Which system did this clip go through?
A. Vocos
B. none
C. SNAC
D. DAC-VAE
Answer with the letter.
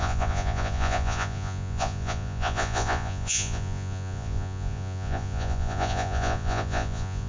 A